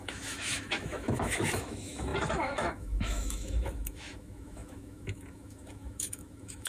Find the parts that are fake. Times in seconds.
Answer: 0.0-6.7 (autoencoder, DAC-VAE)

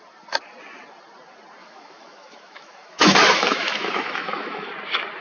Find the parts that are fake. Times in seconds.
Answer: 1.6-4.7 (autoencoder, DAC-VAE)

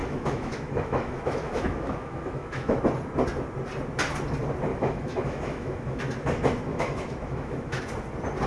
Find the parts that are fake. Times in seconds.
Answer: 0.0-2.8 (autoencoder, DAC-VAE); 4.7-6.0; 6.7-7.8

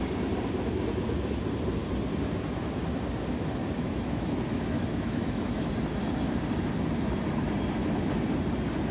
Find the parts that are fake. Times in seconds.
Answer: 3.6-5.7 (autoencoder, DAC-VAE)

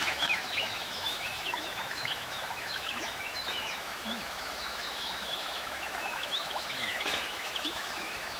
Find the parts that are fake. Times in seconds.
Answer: 0.0-8.4 (autoencoder, DAC-VAE)

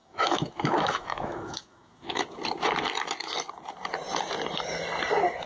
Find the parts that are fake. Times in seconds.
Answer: 0.0-2.2 (autoencoder, DAC-VAE)

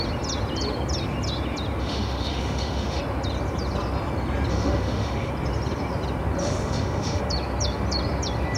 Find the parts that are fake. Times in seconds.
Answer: 1.8-3.0 (autoencoder, DAC-VAE); 4.5-5.3; 6.4-7.2

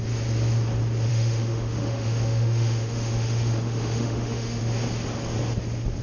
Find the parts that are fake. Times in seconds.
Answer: 1.1-4.6 (autoencoder, DAC-VAE)